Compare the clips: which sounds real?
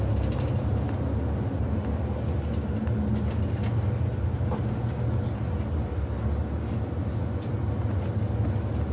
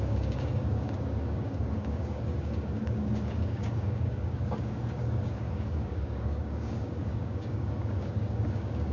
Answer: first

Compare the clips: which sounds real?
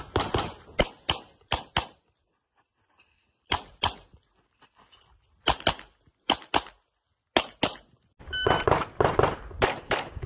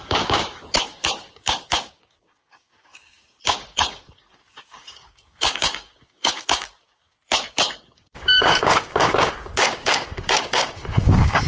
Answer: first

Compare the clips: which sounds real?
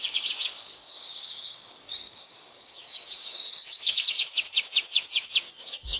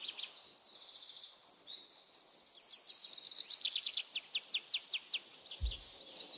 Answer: second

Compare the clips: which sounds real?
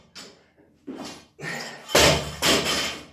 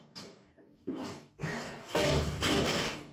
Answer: first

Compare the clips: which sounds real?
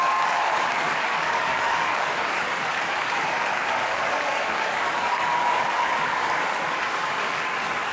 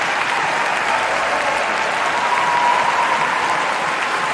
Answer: second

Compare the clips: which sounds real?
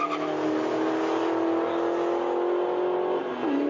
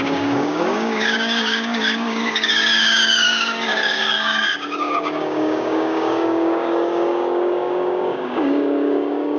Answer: first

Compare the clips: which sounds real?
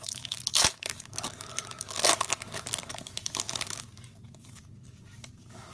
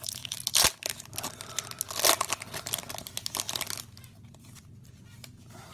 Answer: second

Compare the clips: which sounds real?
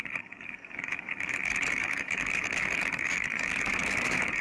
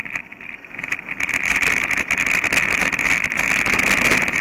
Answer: second